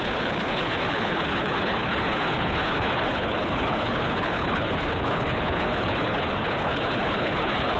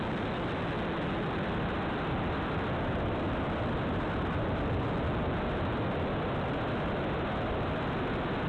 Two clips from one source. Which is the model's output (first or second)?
first